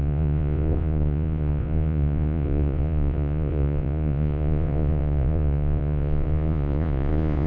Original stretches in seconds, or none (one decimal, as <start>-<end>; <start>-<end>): none